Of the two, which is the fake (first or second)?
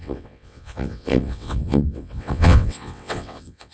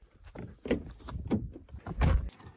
first